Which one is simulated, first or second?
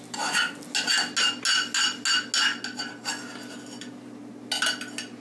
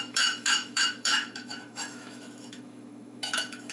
second